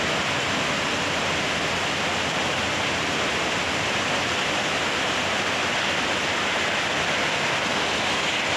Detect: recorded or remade recorded